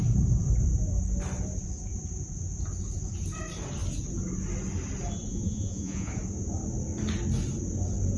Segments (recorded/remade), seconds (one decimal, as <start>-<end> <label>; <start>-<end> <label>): 0.0-5.3 recorded; 5.3-6.1 remade; 6.1-8.2 recorded